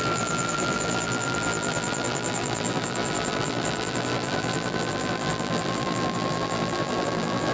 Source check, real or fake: fake